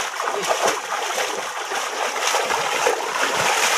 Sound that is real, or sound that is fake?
real